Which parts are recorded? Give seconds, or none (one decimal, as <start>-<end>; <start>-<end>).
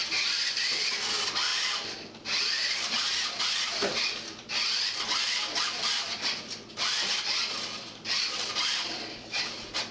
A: 0.0-1.0